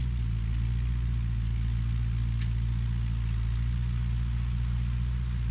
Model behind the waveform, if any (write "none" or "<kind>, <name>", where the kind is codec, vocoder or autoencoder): none